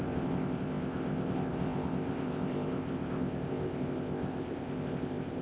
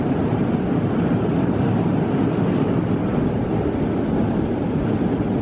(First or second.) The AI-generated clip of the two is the first